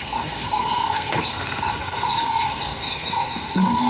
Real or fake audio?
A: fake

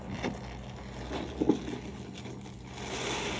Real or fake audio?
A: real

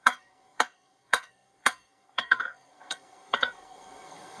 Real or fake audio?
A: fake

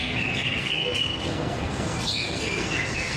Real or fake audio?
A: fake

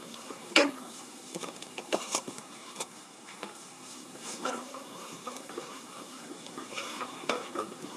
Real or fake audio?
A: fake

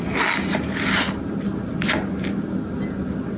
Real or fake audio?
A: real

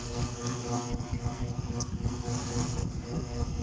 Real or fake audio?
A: fake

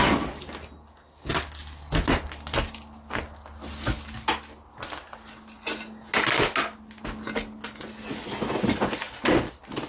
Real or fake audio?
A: real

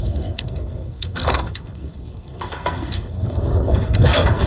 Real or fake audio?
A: fake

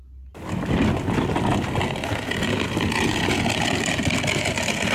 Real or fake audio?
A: real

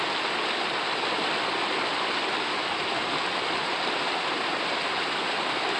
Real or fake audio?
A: real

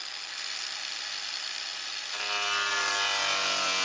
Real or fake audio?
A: real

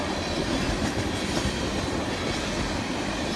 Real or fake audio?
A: real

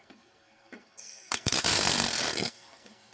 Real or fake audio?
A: fake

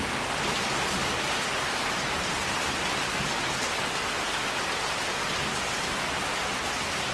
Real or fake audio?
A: real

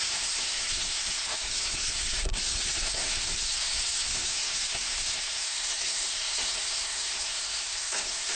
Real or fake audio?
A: fake